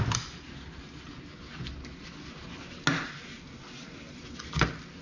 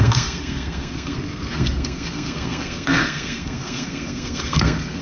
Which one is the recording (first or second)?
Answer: first